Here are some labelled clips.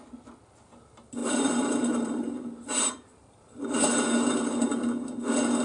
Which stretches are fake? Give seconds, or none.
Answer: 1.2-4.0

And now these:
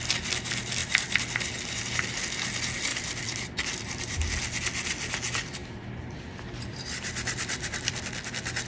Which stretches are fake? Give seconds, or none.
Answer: 2.9-4.3; 5.6-8.0

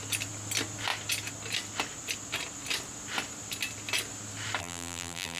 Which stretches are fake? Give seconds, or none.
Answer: 4.6-5.4

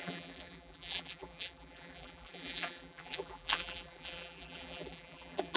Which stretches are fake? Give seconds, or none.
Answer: 0.0-5.6

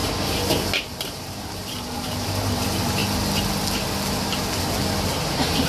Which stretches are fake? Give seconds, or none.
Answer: 0.8-3.0; 5.2-5.7

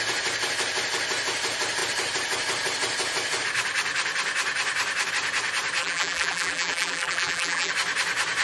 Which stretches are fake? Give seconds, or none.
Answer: 5.8-7.7

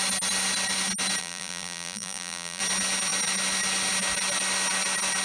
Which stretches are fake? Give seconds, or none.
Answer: 1.2-2.6